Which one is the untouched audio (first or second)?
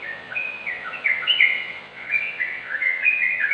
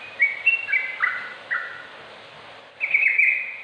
second